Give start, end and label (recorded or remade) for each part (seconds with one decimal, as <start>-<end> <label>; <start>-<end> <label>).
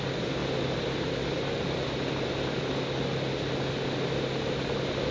0.0-5.1 recorded